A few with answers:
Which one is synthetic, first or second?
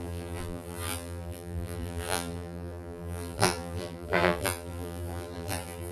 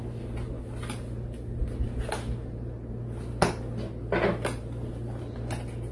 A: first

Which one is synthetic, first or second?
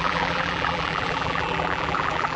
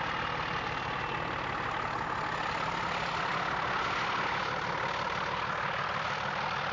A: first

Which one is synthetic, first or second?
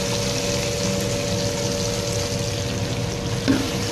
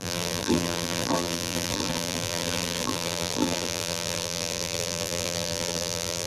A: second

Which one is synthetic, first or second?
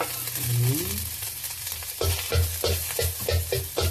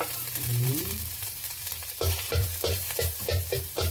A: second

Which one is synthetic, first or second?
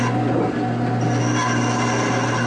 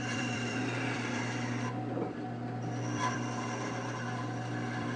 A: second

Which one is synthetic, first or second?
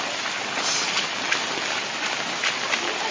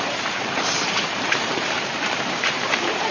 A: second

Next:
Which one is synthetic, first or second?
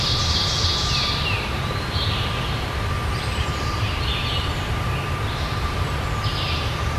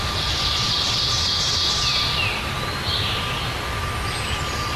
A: first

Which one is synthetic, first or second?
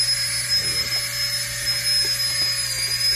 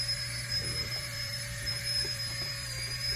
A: second